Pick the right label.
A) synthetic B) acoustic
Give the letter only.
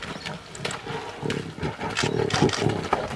B